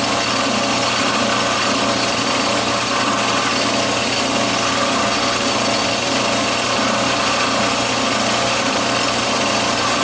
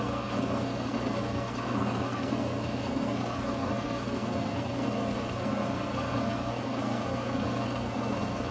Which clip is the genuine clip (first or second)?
first